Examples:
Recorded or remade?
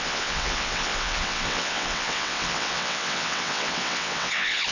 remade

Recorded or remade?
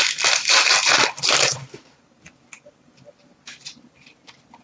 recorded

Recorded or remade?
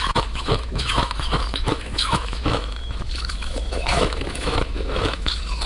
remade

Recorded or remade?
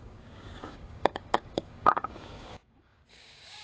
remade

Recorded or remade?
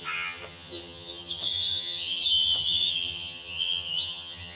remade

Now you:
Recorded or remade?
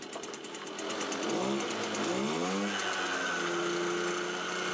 recorded